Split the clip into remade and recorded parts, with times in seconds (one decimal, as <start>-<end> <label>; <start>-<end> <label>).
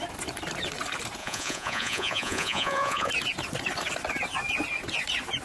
0.0-1.2 recorded; 1.2-3.1 remade; 3.1-5.4 recorded